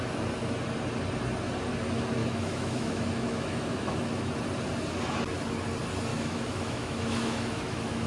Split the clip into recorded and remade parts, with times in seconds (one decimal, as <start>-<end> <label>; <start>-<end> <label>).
0.0-2.2 recorded; 2.2-4.3 remade; 4.3-6.1 recorded; 6.1-8.1 remade